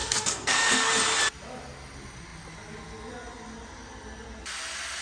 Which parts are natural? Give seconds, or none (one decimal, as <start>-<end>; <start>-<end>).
0.9-5.0